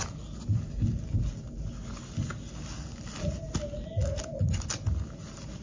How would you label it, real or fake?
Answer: real